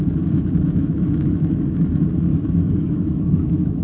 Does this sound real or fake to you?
fake